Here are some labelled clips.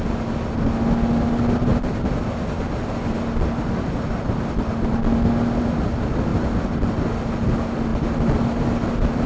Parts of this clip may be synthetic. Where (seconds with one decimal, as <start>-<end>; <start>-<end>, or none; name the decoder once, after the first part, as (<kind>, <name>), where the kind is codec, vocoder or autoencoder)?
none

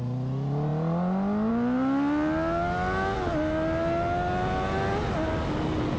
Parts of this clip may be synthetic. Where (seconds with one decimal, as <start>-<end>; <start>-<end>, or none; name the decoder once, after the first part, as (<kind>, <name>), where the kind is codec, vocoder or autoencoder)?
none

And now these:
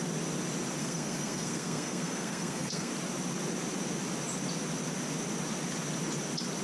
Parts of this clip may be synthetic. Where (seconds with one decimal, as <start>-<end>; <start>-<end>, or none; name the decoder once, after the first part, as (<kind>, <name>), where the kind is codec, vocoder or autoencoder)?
0.8-2.9 (codec, SNAC)

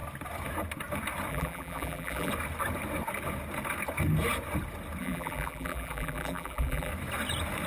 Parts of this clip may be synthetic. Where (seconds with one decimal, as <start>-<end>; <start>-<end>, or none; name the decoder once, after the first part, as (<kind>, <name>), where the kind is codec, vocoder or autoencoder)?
1.3-2.3 (vocoder, BigVGAN v2); 5.0-6.9

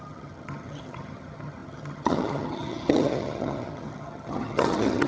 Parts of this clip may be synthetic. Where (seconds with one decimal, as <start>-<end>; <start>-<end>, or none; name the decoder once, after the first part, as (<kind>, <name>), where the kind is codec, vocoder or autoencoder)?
0.0-5.1 (vocoder, HiFi-GAN)